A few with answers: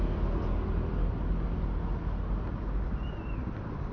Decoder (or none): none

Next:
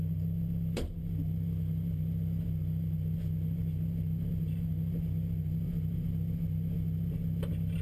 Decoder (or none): none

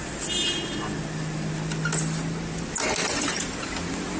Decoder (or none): none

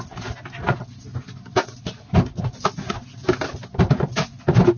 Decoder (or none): none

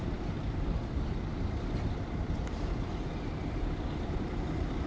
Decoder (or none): vocoder, BigVGAN v2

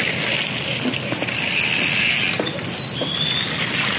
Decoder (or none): none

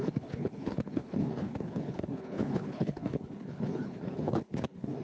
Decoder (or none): codec, HILCodec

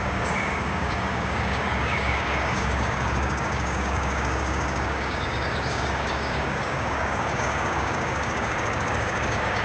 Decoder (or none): codec, DAC